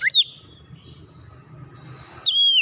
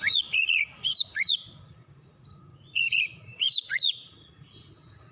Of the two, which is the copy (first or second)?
second